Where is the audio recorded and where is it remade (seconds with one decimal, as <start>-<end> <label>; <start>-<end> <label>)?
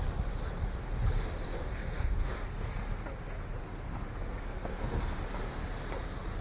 0.0-1.6 recorded; 1.6-2.7 remade; 2.7-3.6 recorded; 3.6-5.2 remade; 5.2-6.4 recorded